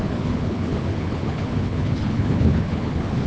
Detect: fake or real fake